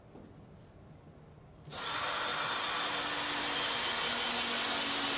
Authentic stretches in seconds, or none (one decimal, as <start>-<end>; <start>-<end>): 0.0-5.2